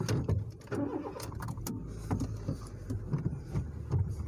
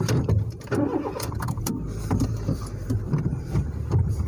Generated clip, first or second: second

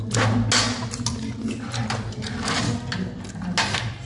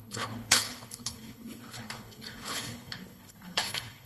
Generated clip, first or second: second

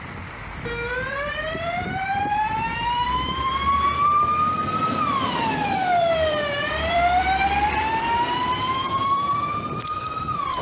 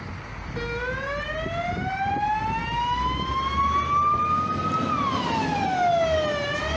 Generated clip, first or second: first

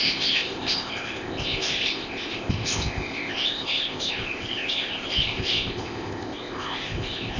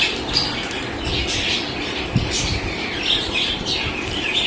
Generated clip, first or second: first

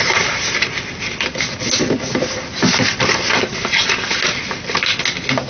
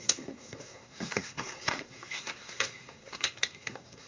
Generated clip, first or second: second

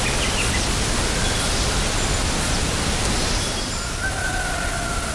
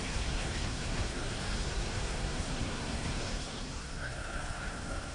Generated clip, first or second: second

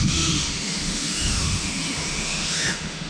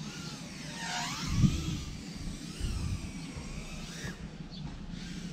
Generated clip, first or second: first